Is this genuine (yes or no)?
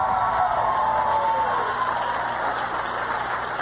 yes